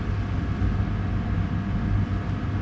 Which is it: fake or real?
real